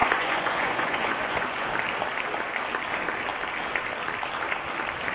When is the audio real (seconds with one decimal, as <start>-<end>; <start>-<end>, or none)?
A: 1.7-5.1